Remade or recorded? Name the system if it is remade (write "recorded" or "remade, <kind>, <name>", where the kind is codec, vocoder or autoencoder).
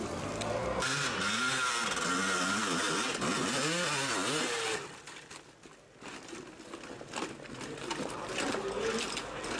recorded